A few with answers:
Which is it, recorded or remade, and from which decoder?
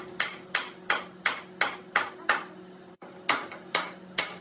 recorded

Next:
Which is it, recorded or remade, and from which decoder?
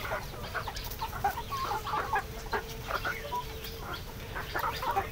remade, vocoder, BigVGAN v2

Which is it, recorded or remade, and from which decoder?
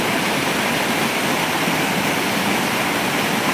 recorded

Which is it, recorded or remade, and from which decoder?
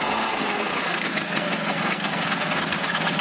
remade, codec, SNAC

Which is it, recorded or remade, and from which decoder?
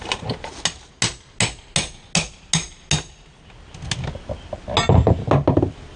recorded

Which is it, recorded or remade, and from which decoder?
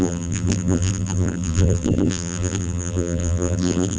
remade, vocoder, BigVGAN v2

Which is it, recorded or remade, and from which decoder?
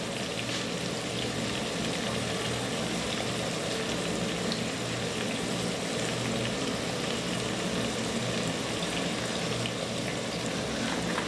recorded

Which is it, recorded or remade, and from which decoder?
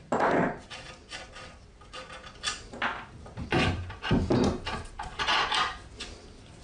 remade, vocoder, BigVGAN v2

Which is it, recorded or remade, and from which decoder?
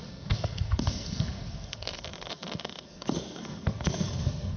remade, codec, SNAC